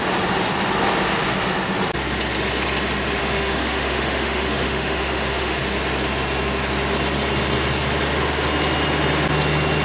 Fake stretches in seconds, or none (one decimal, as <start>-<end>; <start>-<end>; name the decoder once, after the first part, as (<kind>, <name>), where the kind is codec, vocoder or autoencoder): 3.2-5.6 (autoencoder, DAC-VAE)